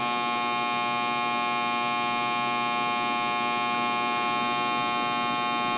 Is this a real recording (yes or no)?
yes